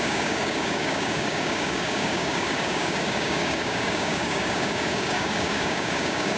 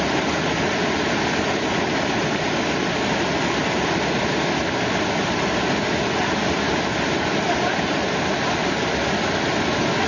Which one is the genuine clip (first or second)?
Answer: second